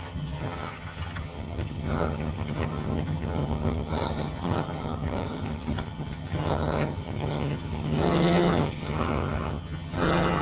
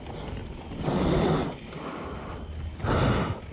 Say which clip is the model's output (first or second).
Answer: first